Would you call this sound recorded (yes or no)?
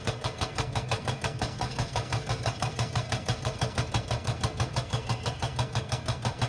no